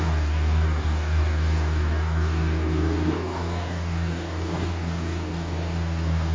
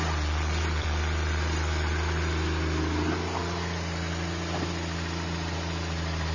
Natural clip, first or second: second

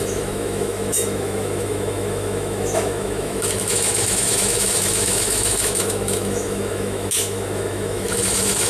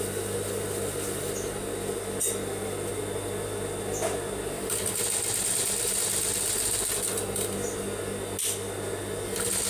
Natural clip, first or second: second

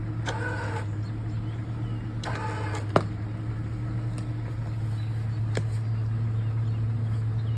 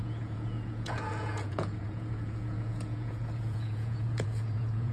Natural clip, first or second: first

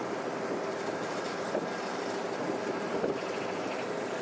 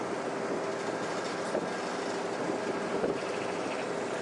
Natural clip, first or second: second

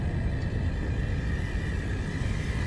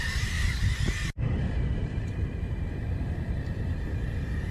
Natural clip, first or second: first